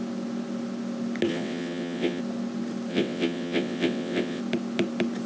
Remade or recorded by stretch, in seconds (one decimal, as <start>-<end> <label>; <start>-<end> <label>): 0.0-1.3 recorded; 1.3-2.2 remade; 2.2-2.9 recorded; 2.9-4.4 remade; 4.4-5.3 recorded